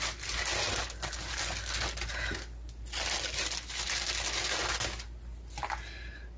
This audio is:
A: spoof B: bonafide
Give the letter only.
B